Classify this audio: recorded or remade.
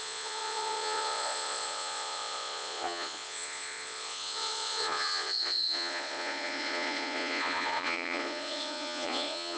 remade